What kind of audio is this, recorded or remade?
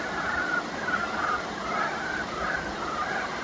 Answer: recorded